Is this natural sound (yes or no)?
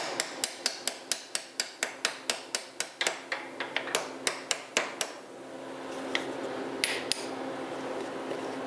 yes